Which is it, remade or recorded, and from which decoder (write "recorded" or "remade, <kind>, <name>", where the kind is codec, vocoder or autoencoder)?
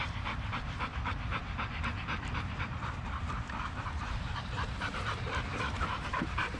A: remade, vocoder, BigVGAN v2